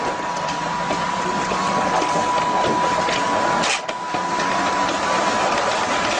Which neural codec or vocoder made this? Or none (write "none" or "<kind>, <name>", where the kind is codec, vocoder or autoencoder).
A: none